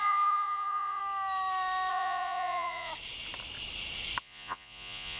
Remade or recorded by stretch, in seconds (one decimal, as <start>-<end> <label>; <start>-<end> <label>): 0.0-1.0 remade; 1.0-1.9 recorded; 1.9-2.9 remade; 2.9-4.2 recorded; 4.2-5.2 remade